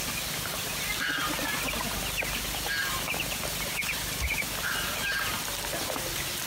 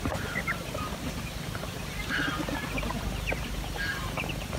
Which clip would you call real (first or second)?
first